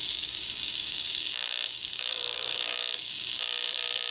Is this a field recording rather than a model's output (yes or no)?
no